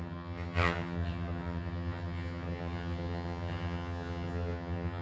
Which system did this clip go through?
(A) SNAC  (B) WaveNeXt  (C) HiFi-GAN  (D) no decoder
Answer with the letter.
C